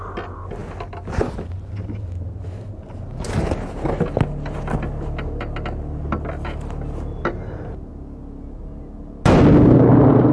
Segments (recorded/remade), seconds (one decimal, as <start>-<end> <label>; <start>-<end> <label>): 0.0-10.3 recorded